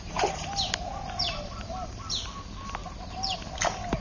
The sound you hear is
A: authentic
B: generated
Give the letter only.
A